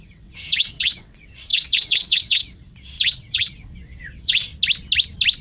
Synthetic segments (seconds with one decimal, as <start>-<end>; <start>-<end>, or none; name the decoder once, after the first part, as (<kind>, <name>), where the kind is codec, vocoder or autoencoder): 0.0-4.5 (vocoder, WaveNeXt)